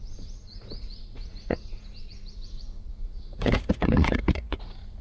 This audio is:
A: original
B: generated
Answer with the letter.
B